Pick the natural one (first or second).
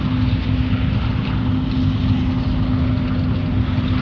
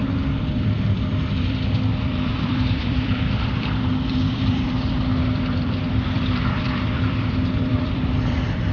first